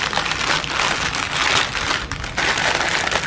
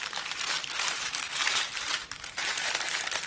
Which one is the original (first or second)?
first